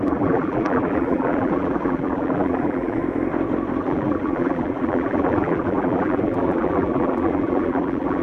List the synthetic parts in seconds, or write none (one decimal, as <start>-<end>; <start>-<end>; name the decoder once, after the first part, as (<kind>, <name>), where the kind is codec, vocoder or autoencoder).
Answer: 0.0-3.0 (vocoder, BigVGAN v2); 3.8-8.2